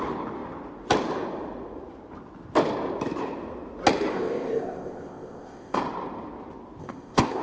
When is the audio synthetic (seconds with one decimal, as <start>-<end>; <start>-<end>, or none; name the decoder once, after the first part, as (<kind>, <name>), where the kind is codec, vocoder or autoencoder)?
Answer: 4.1-5.8 (codec, ZipCodec); 6.8-7.4